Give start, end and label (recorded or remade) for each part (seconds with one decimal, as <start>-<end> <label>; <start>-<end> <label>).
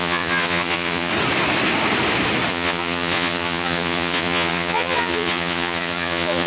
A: 0.0-1.1 remade; 1.1-2.5 recorded; 2.5-6.5 remade